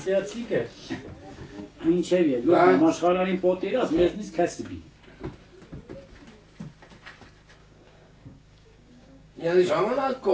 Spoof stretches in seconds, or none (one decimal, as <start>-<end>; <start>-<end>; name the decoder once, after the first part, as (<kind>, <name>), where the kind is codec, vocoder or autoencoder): 1.3-5.0 (codec, DAC); 7.6-9.7

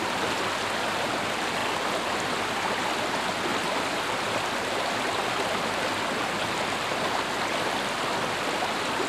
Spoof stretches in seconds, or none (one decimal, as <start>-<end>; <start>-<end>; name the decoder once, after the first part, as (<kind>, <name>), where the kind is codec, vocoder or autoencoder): none

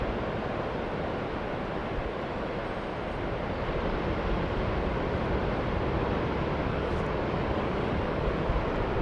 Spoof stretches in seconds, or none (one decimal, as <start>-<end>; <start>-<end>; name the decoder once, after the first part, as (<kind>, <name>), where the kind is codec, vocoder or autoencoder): 6.6-8.4 (codec, DAC)